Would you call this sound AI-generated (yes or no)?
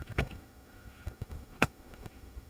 yes